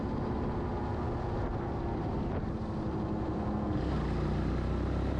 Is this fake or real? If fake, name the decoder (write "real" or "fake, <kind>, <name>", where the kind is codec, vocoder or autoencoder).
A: real